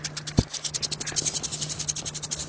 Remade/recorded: recorded